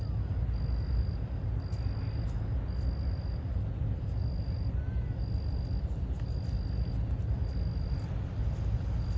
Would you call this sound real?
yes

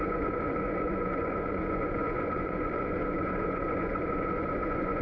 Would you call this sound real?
no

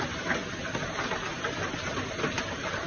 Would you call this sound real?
yes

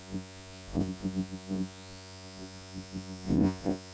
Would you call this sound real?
no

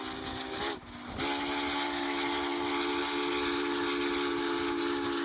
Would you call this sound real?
yes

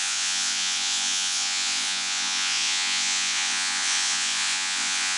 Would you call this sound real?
no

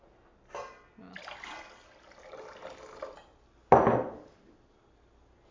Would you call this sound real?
yes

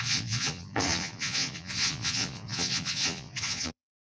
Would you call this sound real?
no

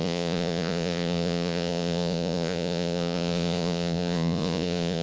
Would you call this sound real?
no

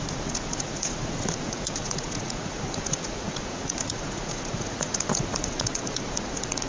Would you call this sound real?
no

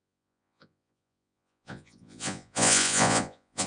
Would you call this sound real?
no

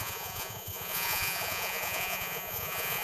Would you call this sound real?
no